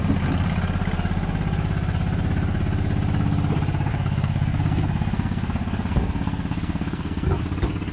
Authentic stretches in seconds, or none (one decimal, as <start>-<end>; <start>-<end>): 0.0-3.9; 7.4-7.9